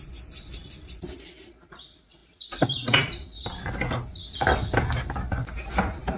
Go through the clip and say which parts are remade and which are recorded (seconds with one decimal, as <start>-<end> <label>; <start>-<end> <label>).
0.0-6.2 recorded